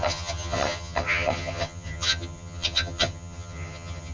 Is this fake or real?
fake